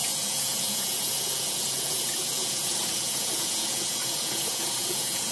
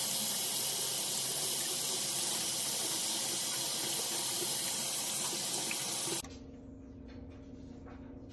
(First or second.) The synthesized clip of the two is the first